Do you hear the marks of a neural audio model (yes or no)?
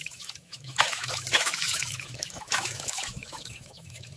yes